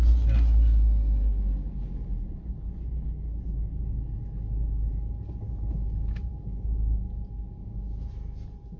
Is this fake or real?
real